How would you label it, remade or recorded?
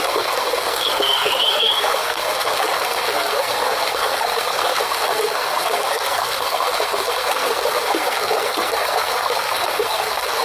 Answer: remade